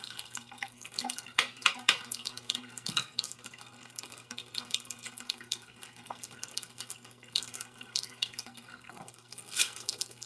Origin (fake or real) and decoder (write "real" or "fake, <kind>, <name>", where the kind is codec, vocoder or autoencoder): fake, codec, SNAC